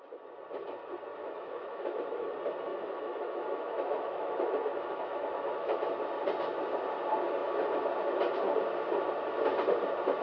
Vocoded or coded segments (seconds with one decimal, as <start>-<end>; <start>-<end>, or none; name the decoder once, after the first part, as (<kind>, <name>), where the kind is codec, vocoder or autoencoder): 1.2-2.3 (autoencoder, DAC-VAE); 2.7-5.9